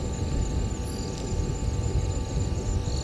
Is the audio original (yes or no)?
yes